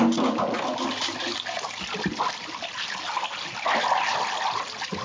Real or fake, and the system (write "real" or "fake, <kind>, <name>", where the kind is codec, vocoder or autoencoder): real